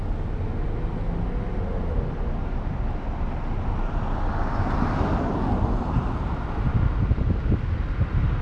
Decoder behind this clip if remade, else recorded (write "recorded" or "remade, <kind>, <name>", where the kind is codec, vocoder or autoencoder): recorded